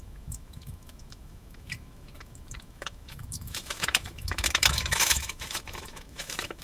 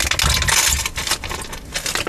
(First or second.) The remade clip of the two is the first